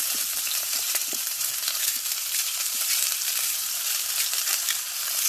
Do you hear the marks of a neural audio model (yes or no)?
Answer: yes